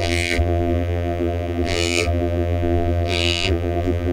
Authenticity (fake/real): fake